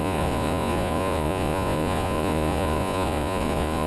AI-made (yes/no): yes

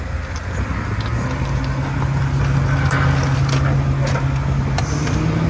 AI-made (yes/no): no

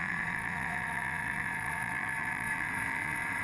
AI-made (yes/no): yes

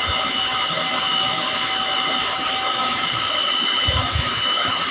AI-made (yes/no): yes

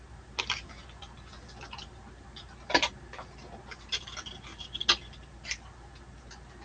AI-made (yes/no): no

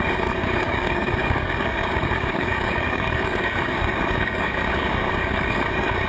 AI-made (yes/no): yes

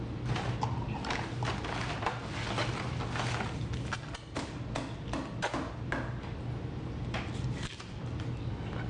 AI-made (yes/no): no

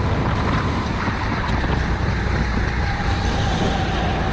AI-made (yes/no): no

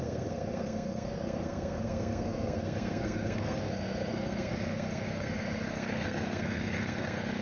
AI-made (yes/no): yes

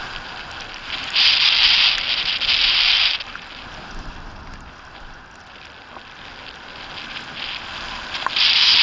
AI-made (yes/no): no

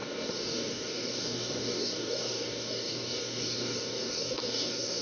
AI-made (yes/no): yes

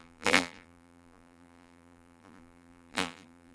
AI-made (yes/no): yes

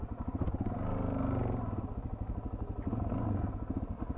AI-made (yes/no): no